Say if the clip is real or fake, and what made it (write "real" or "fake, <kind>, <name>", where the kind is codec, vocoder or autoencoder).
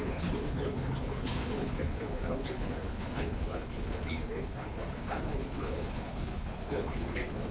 fake, codec, HILCodec